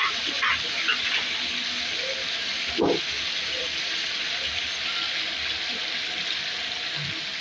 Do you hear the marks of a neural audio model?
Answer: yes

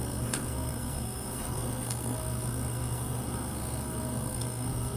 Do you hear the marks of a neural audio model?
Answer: yes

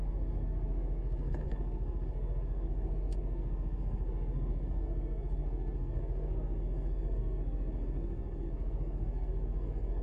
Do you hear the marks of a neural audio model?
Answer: yes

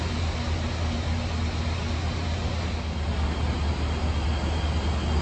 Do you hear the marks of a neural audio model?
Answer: no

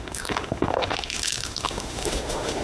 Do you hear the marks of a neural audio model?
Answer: yes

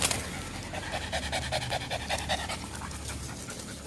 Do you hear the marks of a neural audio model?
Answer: no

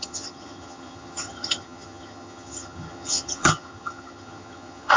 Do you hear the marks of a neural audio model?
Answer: yes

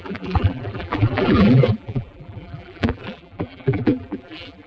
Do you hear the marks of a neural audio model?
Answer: yes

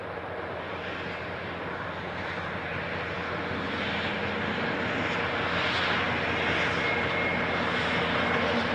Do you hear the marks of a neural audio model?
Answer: no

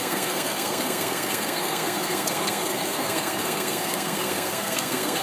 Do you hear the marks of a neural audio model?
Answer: yes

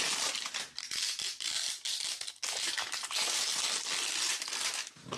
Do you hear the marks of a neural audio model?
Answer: no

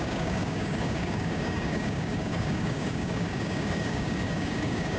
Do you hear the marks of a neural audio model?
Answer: yes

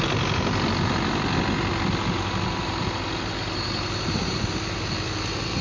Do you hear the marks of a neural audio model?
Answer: no